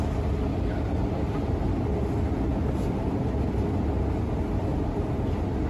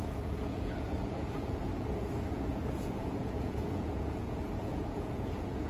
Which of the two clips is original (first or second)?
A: first